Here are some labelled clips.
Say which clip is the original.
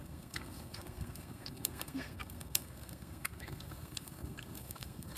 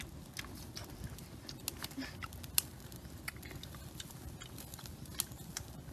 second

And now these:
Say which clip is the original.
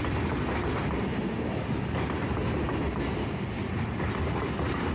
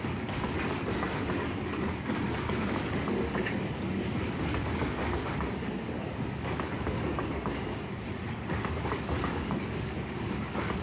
first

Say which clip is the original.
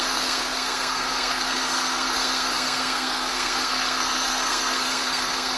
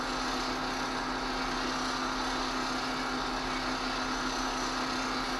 second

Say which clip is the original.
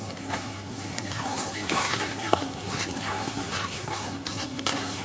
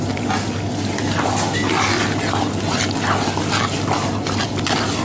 second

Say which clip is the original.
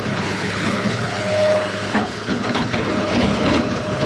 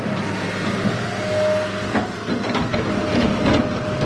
second